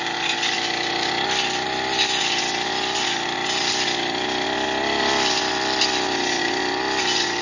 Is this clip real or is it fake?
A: real